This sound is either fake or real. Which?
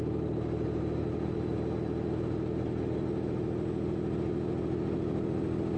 real